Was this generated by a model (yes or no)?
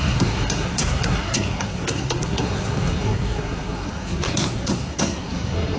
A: yes